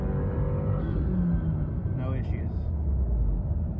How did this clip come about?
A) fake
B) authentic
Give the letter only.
B